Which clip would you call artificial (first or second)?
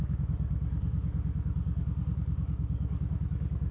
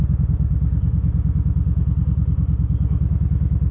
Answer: first